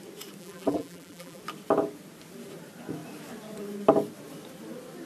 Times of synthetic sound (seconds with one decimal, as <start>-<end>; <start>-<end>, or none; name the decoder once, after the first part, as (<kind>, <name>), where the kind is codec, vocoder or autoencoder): 0.4-1.4 (vocoder, BigVGAN v2)